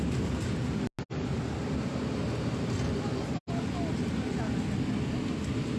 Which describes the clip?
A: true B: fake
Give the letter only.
A